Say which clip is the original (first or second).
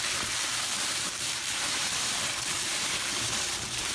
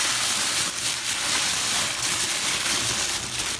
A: second